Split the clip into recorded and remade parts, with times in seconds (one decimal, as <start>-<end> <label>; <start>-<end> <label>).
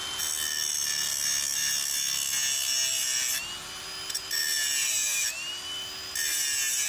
0.0-6.9 recorded